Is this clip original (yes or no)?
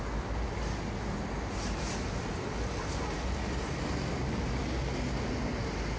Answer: yes